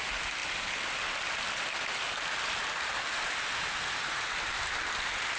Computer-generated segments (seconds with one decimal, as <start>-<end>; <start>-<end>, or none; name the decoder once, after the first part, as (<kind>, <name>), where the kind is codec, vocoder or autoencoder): 0.4-3.6 (vocoder, BigVGAN v2)